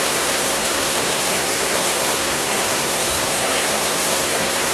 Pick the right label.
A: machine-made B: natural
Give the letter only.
A